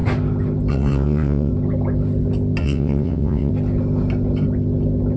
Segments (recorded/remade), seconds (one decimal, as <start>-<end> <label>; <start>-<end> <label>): 0.0-0.7 recorded; 0.7-1.5 remade; 1.5-2.6 recorded; 2.6-3.5 remade; 3.5-5.2 recorded